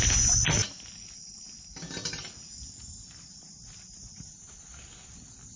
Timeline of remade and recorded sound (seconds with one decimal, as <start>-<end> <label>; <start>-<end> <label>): 0.0-5.6 remade